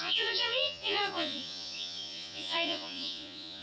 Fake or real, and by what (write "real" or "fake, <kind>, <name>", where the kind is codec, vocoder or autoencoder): fake, vocoder, Vocos